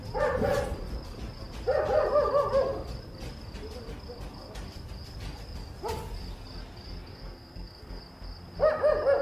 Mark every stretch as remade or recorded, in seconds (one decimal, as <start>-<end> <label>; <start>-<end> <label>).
0.0-7.1 recorded; 7.1-8.0 remade; 8.0-9.2 recorded